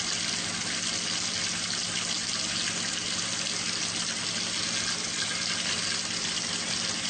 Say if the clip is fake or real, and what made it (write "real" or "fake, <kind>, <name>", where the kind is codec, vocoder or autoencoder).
real